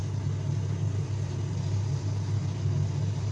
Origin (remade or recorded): recorded